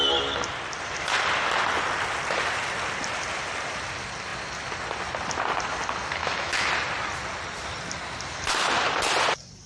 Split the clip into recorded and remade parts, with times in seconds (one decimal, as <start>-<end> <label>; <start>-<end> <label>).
0.0-6.2 recorded; 6.2-6.7 remade; 6.7-9.7 recorded